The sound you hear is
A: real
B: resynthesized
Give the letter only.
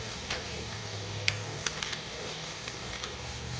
B